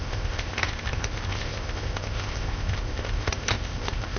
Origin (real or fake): fake